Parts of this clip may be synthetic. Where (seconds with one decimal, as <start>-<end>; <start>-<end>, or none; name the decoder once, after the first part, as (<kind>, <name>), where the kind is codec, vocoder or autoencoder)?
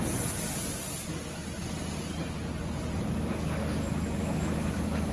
4.2-5.1 (autoencoder, DAC-VAE)